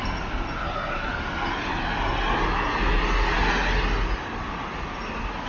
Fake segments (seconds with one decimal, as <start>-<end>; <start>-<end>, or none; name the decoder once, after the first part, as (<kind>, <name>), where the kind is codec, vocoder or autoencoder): none